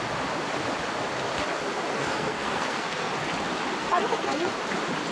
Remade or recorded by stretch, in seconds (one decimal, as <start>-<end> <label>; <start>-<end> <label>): 0.0-1.9 recorded; 1.9-3.1 remade; 3.1-3.8 recorded; 3.8-4.5 remade; 4.5-5.1 recorded